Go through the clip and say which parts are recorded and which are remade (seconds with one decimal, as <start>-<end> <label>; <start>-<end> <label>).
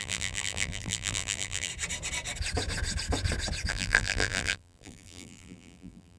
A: 0.0-1.7 remade; 1.7-3.7 recorded; 3.7-6.2 remade